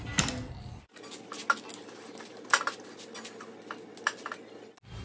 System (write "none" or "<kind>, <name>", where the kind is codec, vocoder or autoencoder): none